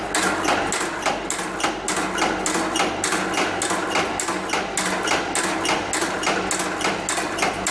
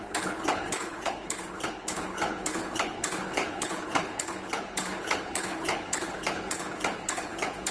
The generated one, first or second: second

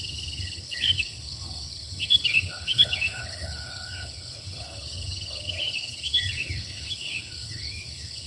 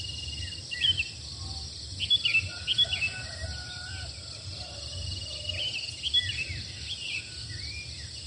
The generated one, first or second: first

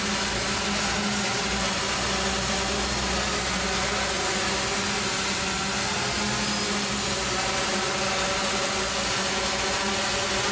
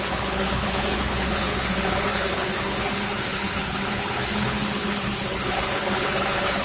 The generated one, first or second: second